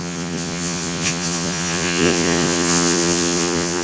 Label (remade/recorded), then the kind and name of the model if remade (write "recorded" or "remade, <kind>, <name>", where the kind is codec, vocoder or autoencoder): remade, vocoder, Vocos